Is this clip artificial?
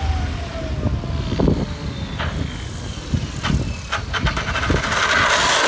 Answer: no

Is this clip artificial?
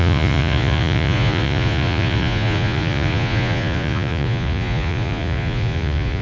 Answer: yes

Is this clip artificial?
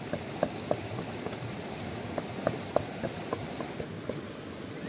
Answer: no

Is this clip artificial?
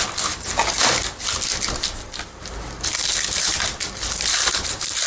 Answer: no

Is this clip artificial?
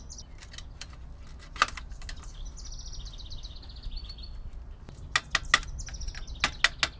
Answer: no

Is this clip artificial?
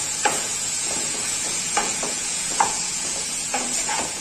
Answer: yes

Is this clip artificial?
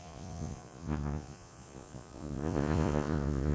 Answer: yes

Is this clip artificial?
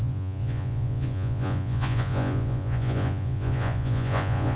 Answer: yes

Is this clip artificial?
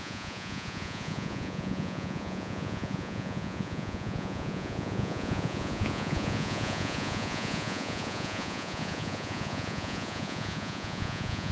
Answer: yes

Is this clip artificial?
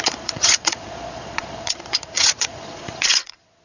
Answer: yes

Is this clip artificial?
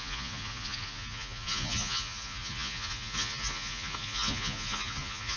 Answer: yes